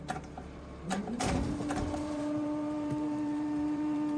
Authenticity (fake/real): fake